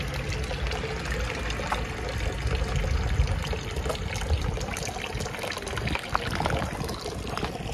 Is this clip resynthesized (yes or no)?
no